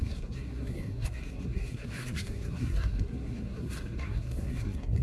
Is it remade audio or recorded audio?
remade